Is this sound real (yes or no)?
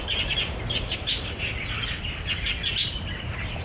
yes